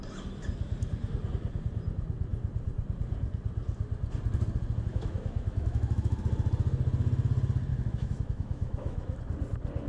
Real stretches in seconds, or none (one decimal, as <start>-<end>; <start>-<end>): 0.0-4.9; 6.2-7.7; 9.2-9.9